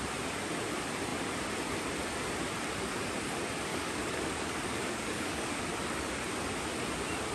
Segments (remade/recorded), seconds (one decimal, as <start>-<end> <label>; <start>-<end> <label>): 0.0-3.7 recorded; 3.7-5.6 remade; 5.6-7.3 recorded